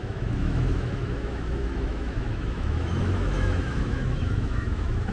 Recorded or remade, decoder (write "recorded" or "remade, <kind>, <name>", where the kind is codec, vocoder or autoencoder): remade, autoencoder, DAC-VAE